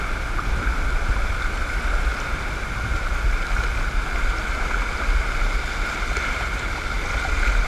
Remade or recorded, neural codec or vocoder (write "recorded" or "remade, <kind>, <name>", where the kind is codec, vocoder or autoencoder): recorded